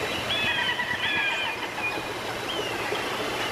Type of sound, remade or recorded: remade